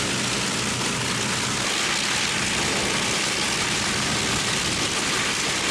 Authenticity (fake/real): real